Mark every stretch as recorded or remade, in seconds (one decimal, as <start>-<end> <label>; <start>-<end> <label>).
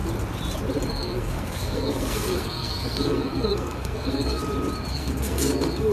0.0-0.9 recorded; 0.9-4.4 remade; 4.4-4.9 recorded; 4.9-5.9 remade